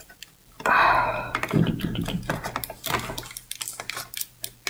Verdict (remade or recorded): recorded